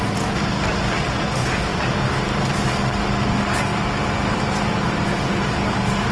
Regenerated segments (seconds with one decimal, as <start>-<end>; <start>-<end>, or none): 3.7-6.1